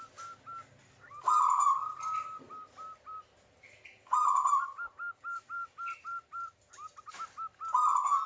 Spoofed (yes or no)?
no